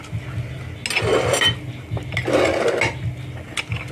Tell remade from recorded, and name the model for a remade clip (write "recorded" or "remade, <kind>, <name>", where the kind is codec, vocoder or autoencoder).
recorded